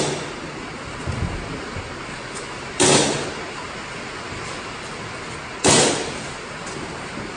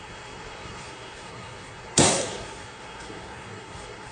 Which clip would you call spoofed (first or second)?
second